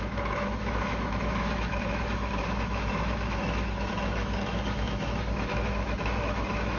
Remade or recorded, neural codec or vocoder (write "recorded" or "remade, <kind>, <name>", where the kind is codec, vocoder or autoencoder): remade, autoencoder, DAC-VAE